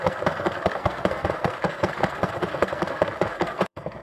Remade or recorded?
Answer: remade